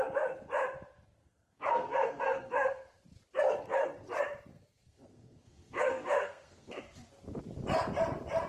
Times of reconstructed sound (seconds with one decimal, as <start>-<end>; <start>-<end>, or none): 1.2-3.0; 4.5-6.8